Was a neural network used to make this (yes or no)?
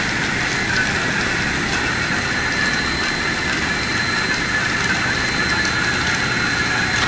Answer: no